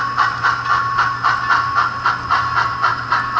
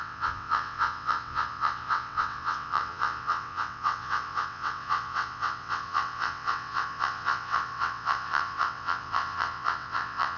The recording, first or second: first